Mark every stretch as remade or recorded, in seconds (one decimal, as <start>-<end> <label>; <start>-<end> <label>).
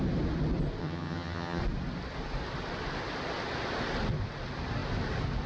0.0-0.8 recorded; 0.8-1.6 remade; 1.6-5.5 recorded